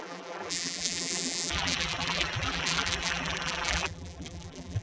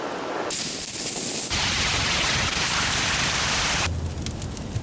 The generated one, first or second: first